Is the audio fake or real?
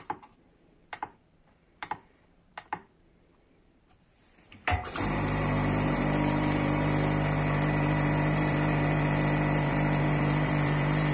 fake